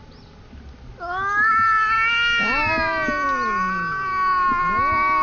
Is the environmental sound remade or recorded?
recorded